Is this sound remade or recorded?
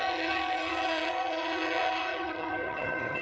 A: remade